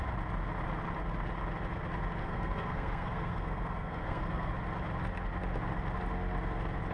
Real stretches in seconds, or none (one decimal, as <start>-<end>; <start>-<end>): 0.0-2.2; 4.5-6.9